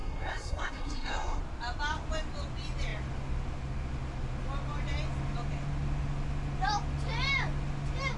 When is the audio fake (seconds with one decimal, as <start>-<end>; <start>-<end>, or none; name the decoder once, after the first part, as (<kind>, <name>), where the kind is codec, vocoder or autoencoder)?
0.0-1.4 (codec, SNAC)